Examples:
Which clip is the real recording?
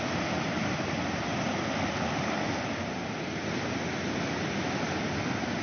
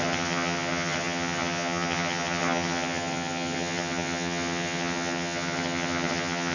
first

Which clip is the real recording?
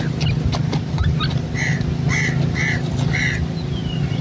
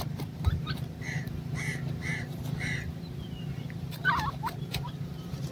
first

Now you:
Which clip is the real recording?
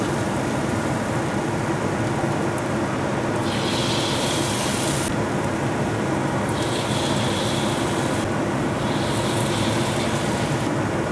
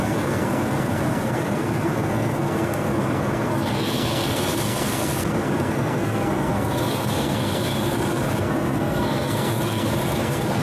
first